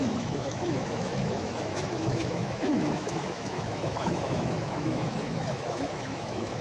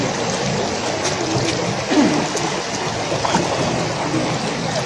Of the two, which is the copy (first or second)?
first